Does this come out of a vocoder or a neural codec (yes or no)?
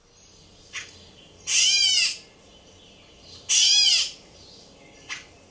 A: no